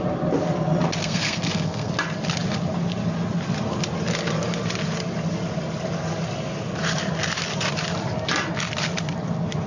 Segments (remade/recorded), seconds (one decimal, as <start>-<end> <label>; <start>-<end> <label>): 0.0-1.0 recorded; 1.0-1.9 remade; 1.9-9.7 recorded